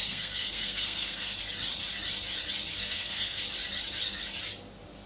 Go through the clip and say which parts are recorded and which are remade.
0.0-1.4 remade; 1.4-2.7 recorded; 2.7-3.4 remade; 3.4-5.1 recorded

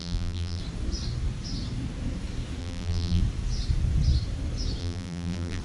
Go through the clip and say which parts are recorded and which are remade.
0.0-0.6 remade; 0.6-2.6 recorded; 2.6-3.2 remade; 3.2-4.8 recorded; 4.8-5.6 remade